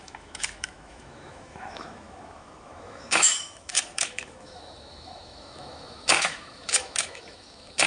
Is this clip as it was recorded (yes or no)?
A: no